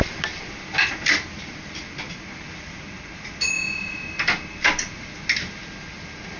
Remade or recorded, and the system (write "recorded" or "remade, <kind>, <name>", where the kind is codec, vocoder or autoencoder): recorded